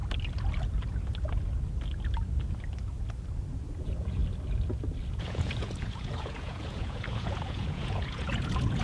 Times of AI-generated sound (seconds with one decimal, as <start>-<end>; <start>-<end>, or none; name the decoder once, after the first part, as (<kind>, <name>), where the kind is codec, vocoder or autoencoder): 3.8-4.2 (vocoder, Vocos); 5.1-8.8